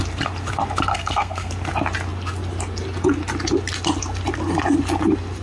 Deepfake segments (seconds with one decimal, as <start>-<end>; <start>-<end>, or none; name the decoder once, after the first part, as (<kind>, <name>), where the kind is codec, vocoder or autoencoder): 0.9-1.5 (codec, SNAC)